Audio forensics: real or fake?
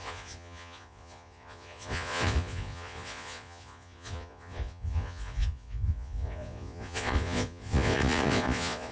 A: fake